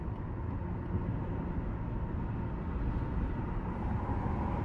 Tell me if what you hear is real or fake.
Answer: real